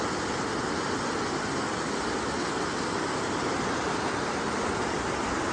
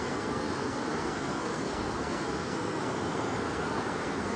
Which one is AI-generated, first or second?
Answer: second